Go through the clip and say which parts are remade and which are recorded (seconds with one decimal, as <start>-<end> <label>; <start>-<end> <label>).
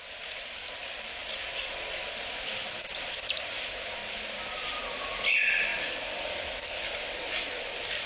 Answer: 0.0-4.0 remade; 4.0-4.5 recorded; 4.5-8.1 remade